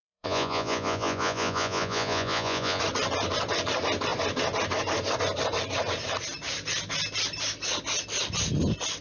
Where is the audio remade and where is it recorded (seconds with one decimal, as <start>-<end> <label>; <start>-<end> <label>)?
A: 0.0-2.8 remade; 2.8-9.0 recorded